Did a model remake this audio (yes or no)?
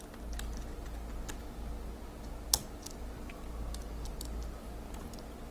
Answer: no